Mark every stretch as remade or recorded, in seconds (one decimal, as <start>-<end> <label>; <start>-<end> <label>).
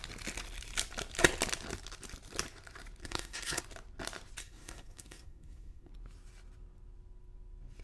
0.0-3.0 recorded; 3.0-3.6 remade; 3.6-4.4 recorded; 4.4-5.9 remade; 5.9-7.8 recorded